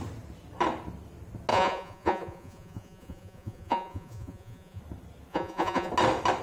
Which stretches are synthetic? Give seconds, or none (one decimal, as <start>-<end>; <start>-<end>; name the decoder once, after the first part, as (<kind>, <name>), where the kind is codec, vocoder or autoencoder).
1.5-4.8 (vocoder, Vocos); 5.3-5.9